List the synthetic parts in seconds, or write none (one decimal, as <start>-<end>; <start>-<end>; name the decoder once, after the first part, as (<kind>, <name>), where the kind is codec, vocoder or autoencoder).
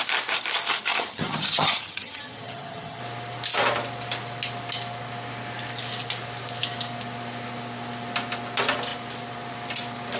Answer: 0.9-3.0 (vocoder, HiFi-GAN)